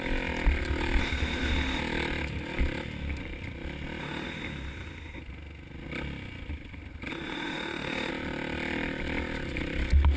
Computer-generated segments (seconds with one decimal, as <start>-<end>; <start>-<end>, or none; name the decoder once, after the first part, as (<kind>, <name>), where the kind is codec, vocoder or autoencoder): 1.0-1.8 (autoencoder, DAC-VAE); 4.0-5.2; 7.1-8.1